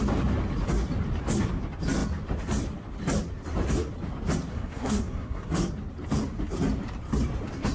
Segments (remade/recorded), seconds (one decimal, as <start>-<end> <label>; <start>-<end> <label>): 0.0-4.5 recorded; 4.5-5.7 remade; 5.7-7.7 recorded